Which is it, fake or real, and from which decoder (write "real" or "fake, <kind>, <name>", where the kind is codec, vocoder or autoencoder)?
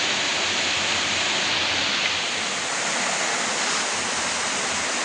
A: real